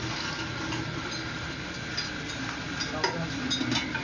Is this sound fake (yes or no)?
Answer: no